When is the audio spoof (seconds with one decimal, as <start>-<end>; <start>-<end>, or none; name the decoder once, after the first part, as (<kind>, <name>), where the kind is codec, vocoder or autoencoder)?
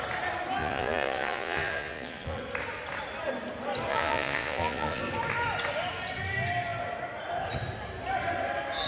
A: 0.6-2.4 (vocoder, Vocos); 3.9-5.0